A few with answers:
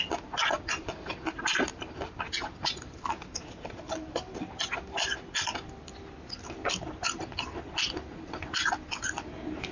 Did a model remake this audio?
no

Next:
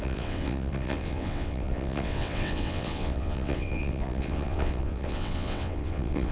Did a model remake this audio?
yes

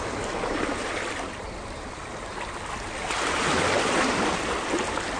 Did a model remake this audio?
no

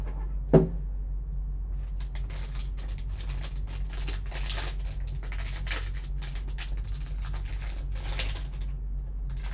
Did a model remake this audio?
no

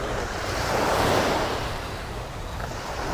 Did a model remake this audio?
yes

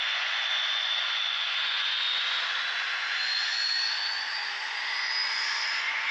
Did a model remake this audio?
yes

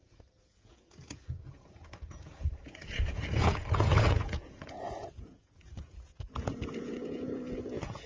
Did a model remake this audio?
yes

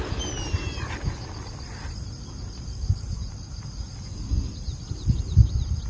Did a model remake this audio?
no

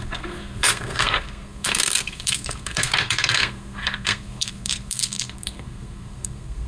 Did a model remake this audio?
yes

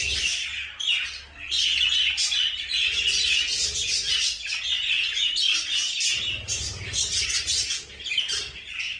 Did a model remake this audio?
no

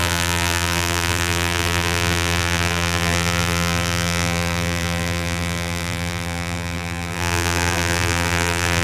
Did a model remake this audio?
yes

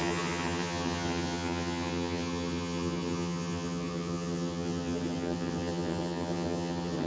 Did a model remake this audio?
yes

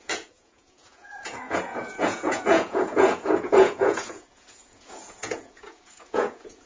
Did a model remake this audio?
yes